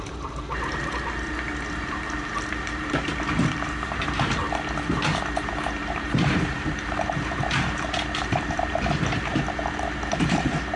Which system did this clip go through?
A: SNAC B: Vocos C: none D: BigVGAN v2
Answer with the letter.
D